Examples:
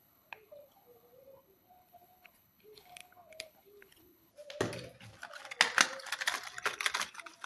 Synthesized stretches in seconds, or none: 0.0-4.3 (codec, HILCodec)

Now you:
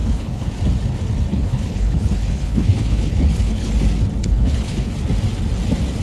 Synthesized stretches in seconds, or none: 0.0-0.5 (codec, HILCodec); 1.3-3.7; 4.2-4.9

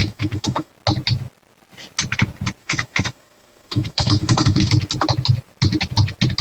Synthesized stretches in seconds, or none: 0.0-0.7 (autoencoder, DAC-VAE); 2.6-4.7

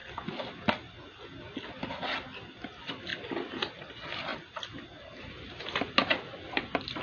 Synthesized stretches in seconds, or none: none

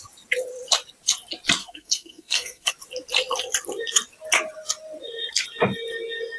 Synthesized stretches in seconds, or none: 1.6-2.7 (codec, SNAC)

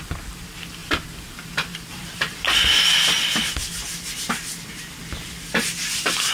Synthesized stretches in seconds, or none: 0.8-3.4 (vocoder, BigVGAN v2)

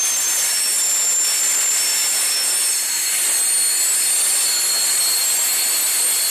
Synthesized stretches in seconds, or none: none

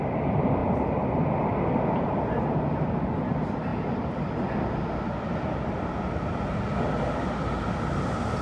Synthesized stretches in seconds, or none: 0.6-2.6 (vocoder, BigVGAN v2)